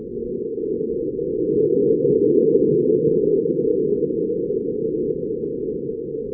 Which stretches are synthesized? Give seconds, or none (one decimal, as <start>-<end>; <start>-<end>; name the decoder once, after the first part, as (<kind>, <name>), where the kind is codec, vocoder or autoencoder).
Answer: 0.0-3.7 (codec, DAC); 5.6-6.3

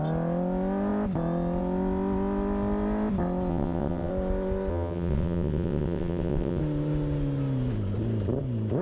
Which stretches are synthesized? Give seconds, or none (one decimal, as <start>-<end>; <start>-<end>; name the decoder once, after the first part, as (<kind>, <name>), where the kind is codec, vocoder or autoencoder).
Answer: 3.5-4.1 (vocoder, WaveNeXt); 4.7-6.6

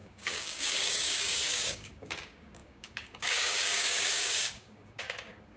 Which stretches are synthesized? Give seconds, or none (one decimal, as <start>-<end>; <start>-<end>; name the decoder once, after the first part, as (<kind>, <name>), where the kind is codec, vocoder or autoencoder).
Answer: 0.0-5.6 (codec, DAC)

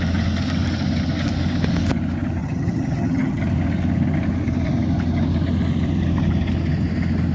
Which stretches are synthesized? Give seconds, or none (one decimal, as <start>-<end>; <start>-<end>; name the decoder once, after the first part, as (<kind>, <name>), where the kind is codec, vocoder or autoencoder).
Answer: 2.4-3.4 (vocoder, HiFi-GAN)